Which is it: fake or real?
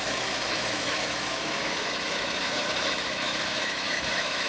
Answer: fake